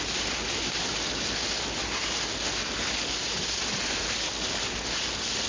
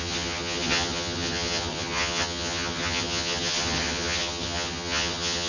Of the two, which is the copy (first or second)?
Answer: second